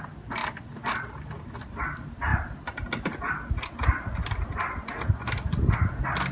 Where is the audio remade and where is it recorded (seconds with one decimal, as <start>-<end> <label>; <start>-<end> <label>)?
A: 0.0-6.3 recorded